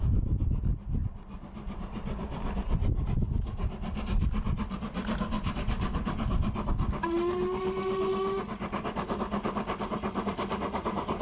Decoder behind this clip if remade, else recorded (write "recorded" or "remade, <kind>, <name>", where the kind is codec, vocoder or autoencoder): recorded